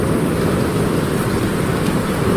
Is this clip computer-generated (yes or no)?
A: no